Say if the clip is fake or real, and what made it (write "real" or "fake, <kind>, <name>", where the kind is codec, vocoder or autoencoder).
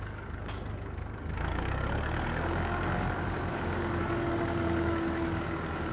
fake, codec, DAC